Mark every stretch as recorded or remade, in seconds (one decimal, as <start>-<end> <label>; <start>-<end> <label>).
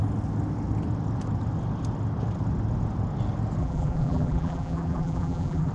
0.0-3.6 recorded; 3.6-5.7 remade